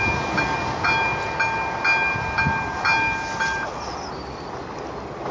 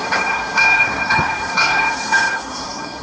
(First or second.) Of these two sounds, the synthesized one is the second